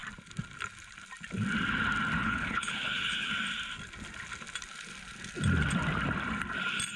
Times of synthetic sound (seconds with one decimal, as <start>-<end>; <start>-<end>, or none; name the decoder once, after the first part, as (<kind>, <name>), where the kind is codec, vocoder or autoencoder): 2.2-3.3 (codec, HILCodec)